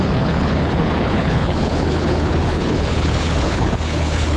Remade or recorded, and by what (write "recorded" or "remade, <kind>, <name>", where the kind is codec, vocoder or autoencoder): remade, codec, HILCodec